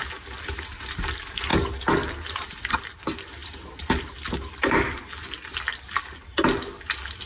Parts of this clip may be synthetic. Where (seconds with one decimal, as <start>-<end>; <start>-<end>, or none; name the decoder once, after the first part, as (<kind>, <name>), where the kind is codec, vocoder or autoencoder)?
none